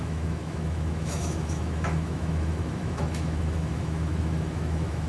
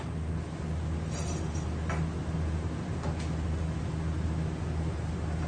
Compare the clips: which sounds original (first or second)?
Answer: second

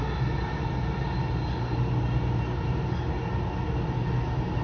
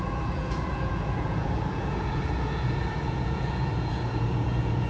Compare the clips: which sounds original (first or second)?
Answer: first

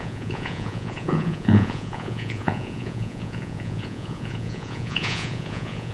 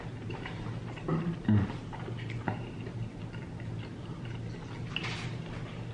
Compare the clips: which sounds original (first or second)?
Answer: second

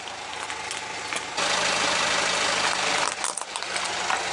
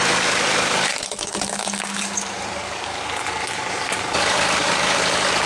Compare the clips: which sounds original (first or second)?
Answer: first